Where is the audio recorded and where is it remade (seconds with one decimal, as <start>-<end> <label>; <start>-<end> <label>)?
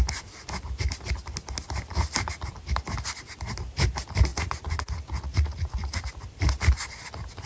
0.0-4.3 recorded; 4.3-6.2 remade; 6.2-7.5 recorded